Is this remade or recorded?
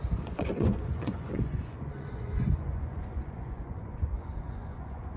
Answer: remade